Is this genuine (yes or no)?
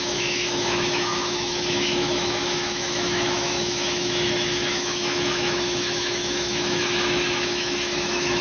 no